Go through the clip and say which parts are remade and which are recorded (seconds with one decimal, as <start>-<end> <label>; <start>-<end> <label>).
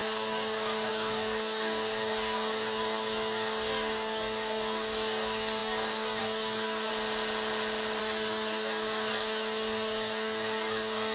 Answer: 0.0-6.9 remade; 6.9-8.0 recorded; 8.0-11.1 remade